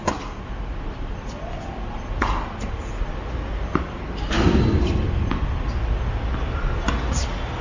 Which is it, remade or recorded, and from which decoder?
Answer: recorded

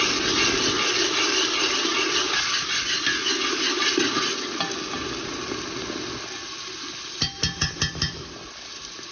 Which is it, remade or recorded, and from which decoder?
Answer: recorded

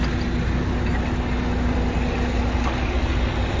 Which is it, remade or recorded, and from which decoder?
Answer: recorded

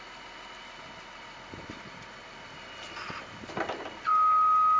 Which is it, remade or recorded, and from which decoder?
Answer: recorded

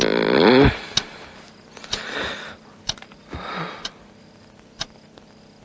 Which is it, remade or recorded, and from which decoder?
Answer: recorded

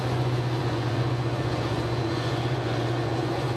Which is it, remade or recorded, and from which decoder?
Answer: remade, vocoder, Vocos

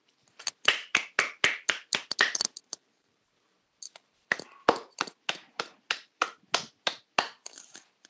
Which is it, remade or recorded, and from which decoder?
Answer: recorded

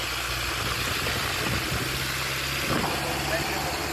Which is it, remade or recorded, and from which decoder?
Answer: recorded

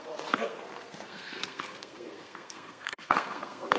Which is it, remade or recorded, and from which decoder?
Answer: remade, codec, SNAC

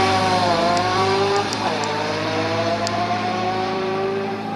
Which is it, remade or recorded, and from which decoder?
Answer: remade, vocoder, BigVGAN v2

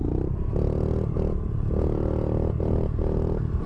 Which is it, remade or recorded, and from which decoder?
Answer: recorded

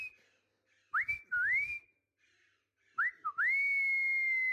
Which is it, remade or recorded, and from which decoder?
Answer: recorded